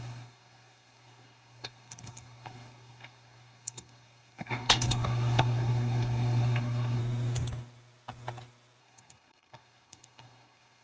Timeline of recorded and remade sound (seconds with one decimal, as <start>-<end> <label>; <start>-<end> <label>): 0.0-7.0 remade; 7.0-8.8 recorded; 8.8-10.8 remade